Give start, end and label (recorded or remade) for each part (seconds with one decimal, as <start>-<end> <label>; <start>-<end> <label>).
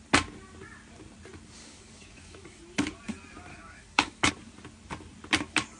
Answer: 0.0-1.6 recorded; 1.6-2.6 remade; 2.6-3.5 recorded; 3.5-4.3 remade; 4.3-5.8 recorded